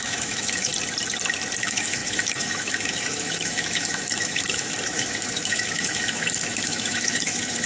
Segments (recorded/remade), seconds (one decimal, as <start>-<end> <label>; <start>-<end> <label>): 0.0-0.7 remade; 0.7-1.6 recorded; 1.6-7.7 remade